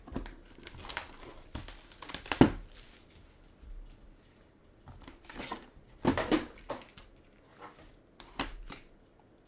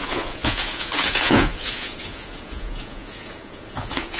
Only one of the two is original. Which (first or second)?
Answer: first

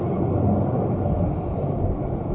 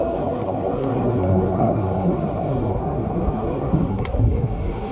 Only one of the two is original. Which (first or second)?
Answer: first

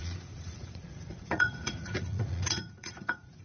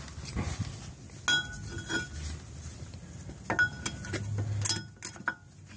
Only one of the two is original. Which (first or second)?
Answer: second